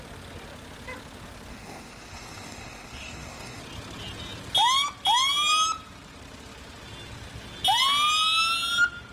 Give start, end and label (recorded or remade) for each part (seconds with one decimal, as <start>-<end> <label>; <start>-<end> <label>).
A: 0.0-1.5 recorded; 1.5-3.6 remade; 3.6-9.1 recorded